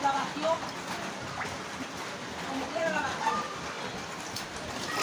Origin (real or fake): fake